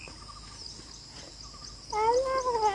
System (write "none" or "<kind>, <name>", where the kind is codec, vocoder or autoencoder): none